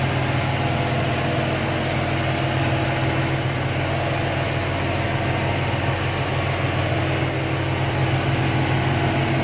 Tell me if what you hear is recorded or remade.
recorded